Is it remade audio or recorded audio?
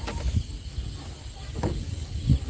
recorded